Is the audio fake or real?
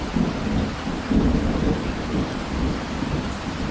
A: real